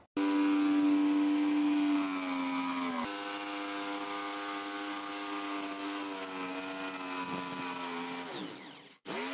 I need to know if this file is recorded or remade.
recorded